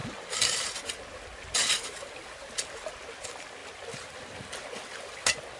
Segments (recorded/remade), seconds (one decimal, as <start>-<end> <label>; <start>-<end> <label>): 0.0-5.6 recorded